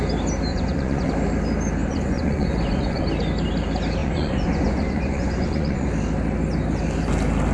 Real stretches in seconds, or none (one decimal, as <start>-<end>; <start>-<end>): 0.0-0.5; 1.1-1.8; 3.0-4.0; 5.9-7.5

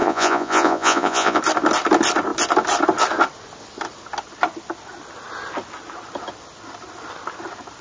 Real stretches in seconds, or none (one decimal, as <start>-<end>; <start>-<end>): 1.4-7.8

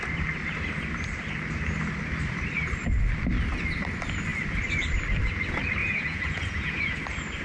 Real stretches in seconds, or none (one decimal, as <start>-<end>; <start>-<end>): 0.0-5.8; 7.0-7.4

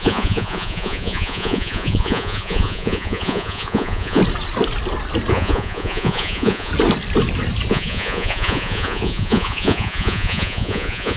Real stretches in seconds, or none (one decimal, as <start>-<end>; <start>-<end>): 4.2-5.3; 6.7-7.7

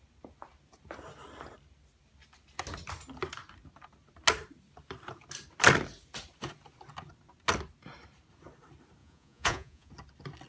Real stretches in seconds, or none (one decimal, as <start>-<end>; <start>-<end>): 0.0-9.0; 9.9-10.5

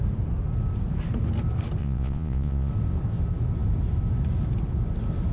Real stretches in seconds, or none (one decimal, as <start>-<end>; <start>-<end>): 0.0-1.8; 2.7-5.3

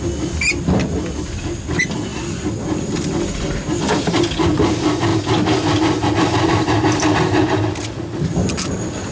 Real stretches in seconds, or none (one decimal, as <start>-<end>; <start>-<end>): 0.0-9.1

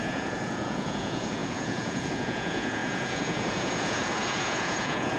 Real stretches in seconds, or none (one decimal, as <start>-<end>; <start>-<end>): none